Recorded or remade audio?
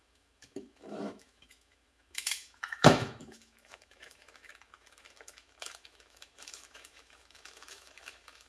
remade